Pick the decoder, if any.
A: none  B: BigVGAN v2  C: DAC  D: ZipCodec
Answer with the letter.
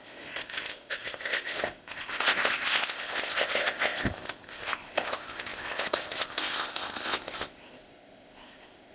D